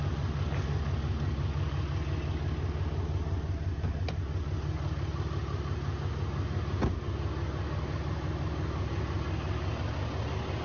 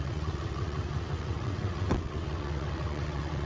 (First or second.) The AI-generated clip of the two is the second